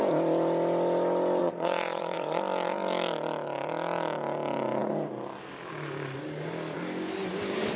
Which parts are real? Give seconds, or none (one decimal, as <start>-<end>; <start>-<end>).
0.0-1.4; 2.4-7.8